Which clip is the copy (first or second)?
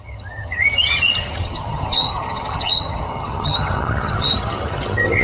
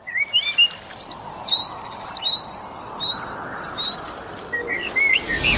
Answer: first